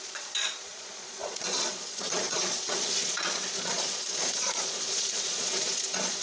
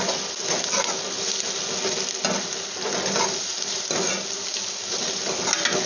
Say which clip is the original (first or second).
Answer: second